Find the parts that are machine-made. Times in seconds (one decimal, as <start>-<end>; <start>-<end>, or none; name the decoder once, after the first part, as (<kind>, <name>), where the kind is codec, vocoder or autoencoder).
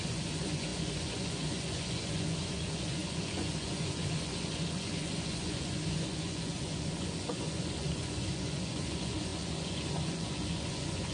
0.0-11.1 (vocoder, Vocos)